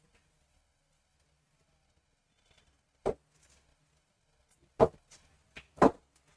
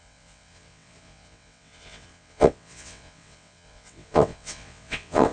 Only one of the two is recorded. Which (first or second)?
first